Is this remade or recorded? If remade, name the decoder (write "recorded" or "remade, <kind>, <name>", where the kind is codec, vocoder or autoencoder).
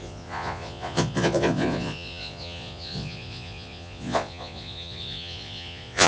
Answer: remade, vocoder, Vocos